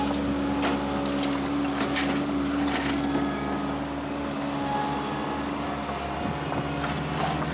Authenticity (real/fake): real